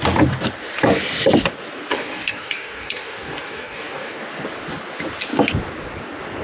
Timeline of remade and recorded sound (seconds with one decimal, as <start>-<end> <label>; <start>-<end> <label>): 0.0-1.9 recorded; 1.9-4.2 remade; 4.2-6.4 recorded